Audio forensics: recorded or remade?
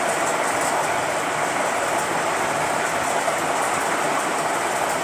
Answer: recorded